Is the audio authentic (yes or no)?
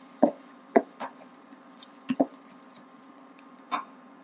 no